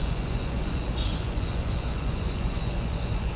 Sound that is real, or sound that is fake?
fake